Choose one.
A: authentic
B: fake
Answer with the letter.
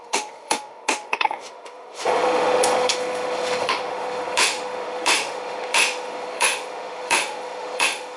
B